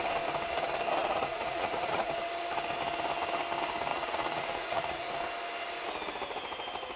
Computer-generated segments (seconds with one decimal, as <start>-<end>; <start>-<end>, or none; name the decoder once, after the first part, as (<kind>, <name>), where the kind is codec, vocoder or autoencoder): 1.0-2.1 (vocoder, Vocos); 3.9-5.1